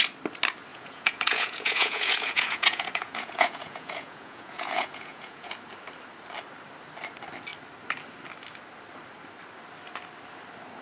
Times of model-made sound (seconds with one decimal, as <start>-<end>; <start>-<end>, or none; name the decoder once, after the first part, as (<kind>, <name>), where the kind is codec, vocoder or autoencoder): 0.7-5.5 (vocoder, Vocos)